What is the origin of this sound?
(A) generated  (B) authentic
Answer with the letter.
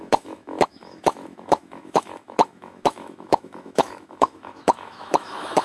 A